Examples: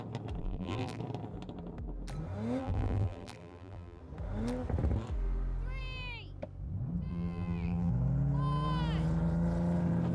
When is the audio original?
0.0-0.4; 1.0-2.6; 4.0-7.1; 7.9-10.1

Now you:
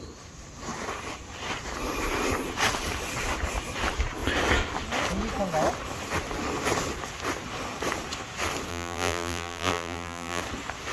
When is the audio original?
0.0-8.7; 10.4-10.9

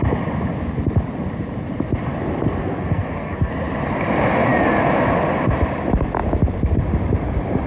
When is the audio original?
0.0-2.6; 3.5-7.7